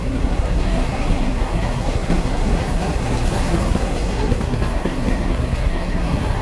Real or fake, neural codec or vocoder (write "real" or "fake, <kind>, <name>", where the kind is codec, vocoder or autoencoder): fake, codec, SNAC